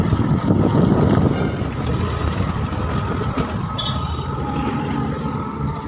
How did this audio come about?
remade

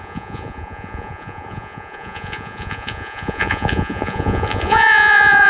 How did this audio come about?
remade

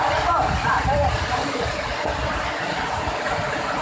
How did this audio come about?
recorded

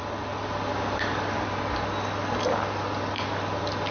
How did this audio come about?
recorded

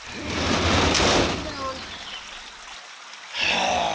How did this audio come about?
recorded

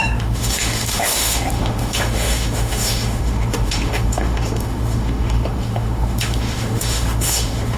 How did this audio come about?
remade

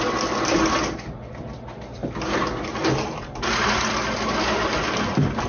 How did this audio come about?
recorded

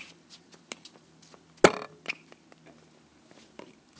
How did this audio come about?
recorded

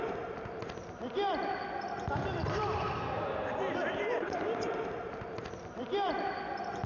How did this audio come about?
remade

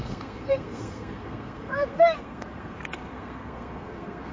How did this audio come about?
remade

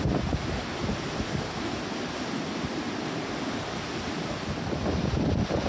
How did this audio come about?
recorded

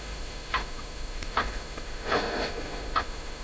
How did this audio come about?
remade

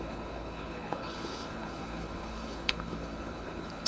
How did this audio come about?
remade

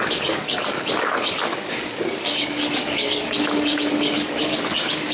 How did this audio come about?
remade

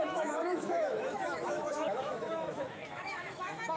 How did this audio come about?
remade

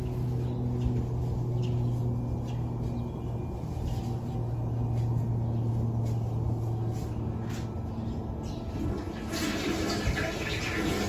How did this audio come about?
recorded